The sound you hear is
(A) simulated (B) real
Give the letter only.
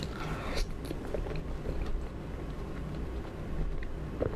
B